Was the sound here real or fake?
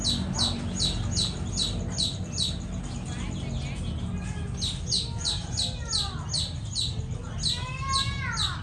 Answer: real